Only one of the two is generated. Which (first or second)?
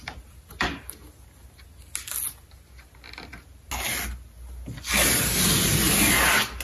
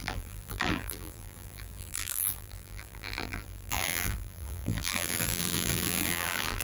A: second